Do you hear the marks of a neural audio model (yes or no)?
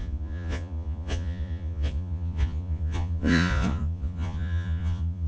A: yes